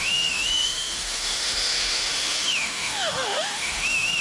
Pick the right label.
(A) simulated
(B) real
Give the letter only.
A